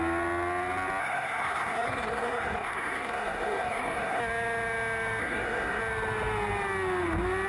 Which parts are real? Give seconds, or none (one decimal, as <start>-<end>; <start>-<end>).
0.0-1.0; 4.2-5.2; 5.8-7.5